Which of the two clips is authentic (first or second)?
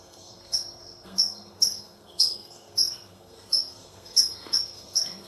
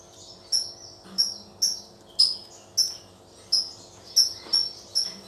second